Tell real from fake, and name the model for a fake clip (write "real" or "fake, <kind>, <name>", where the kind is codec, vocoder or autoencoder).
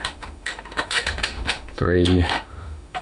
fake, autoencoder, DAC-VAE